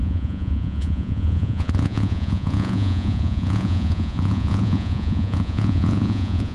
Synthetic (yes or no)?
yes